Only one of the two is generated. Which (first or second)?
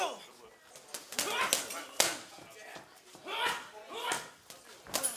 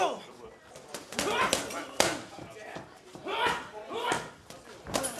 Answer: second